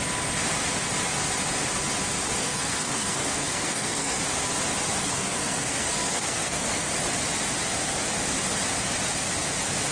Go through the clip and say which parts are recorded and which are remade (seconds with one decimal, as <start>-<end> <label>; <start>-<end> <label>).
0.0-2.4 recorded; 2.4-4.2 remade; 4.2-5.0 recorded; 5.0-6.9 remade; 6.9-9.9 recorded